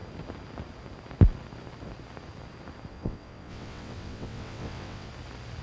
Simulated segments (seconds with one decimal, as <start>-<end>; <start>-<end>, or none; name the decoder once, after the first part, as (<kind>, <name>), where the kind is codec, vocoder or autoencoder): 2.9-5.1 (vocoder, WaveNeXt)

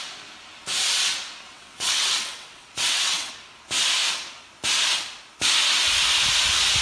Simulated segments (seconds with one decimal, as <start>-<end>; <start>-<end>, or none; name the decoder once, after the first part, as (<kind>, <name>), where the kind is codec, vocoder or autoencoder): 1.5-3.3 (vocoder, WaveNeXt)

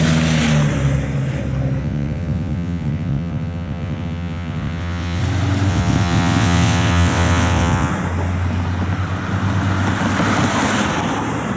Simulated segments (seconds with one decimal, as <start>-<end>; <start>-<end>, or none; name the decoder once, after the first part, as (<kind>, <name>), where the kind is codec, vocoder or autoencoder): 1.8-5.2 (vocoder, WaveNeXt); 5.7-7.9

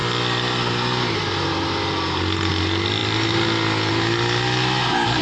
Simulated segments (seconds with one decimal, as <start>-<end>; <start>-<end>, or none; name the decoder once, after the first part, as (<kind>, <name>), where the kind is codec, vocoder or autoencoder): none